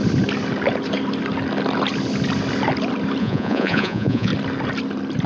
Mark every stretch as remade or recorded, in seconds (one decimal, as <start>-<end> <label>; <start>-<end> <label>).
0.0-3.2 recorded; 3.2-4.3 remade; 4.3-5.3 recorded